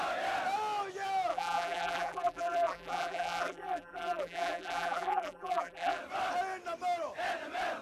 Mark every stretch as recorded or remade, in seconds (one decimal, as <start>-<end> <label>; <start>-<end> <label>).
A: 0.0-1.3 recorded; 1.3-6.0 remade; 6.0-7.8 recorded